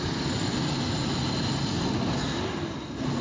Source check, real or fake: real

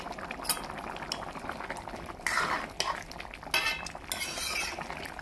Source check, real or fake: real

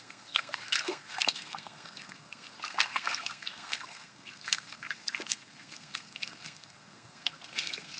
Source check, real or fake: fake